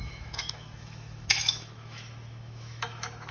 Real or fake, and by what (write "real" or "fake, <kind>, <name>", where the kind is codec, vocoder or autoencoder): fake, autoencoder, DAC-VAE